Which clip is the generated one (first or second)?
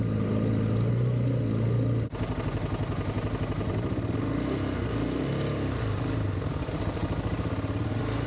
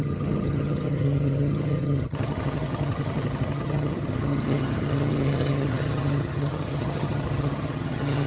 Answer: second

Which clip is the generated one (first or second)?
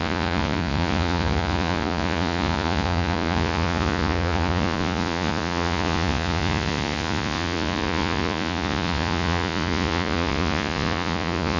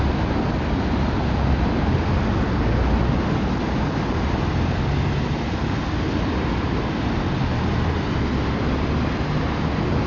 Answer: first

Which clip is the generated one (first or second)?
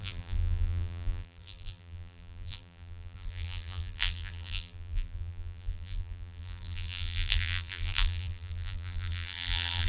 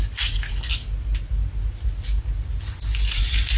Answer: first